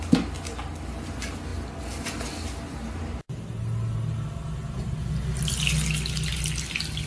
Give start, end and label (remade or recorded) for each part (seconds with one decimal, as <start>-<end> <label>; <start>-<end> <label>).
0.0-7.1 recorded